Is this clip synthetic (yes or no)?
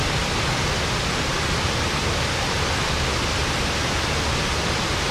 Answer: no